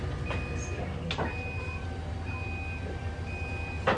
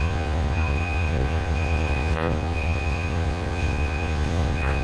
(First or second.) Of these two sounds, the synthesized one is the second